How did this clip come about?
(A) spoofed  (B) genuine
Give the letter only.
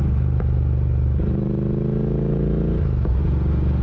B